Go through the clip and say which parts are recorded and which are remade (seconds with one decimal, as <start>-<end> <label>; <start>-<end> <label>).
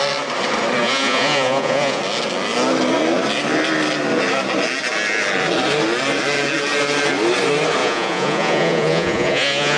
0.0-0.8 recorded; 0.8-2.0 remade; 2.0-7.8 recorded; 7.8-9.8 remade